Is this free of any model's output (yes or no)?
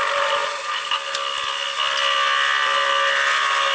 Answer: yes